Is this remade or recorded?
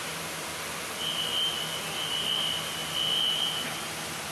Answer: remade